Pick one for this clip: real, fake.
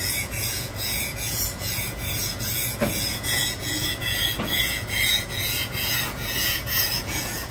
fake